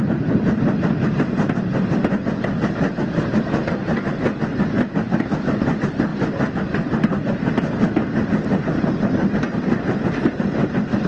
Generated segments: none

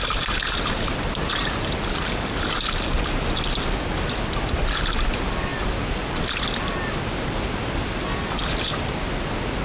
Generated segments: none

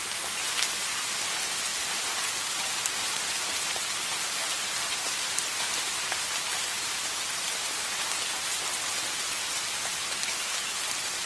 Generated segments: 1.7-4.8 (vocoder, BigVGAN v2)

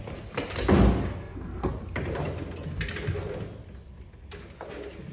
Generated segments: 1.2-1.7 (codec, SNAC)